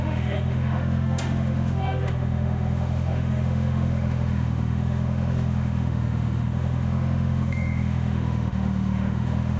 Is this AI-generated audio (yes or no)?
yes